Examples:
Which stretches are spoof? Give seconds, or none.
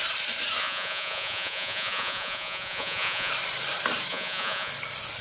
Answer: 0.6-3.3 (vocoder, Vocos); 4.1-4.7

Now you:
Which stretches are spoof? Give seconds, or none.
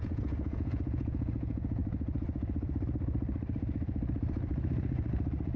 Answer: 0.0-1.8 (vocoder, Vocos)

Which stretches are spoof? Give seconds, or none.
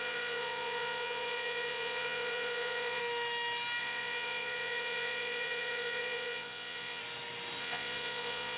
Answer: 0.0-3.0 (vocoder, Vocos); 3.8-7.0; 7.6-8.6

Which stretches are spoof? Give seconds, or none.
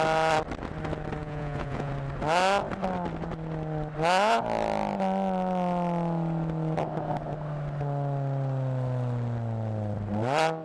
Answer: 1.2-1.9 (vocoder, Vocos)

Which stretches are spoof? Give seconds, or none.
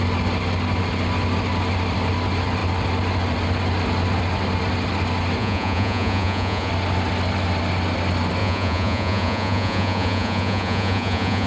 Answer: 5.4-6.7 (vocoder, Vocos); 8.4-11.5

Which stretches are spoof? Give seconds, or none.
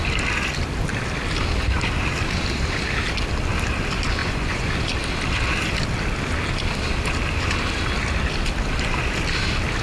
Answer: 4.2-4.7 (vocoder, Vocos)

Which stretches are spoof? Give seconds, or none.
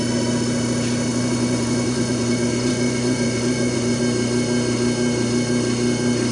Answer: 1.1-4.0 (vocoder, Vocos)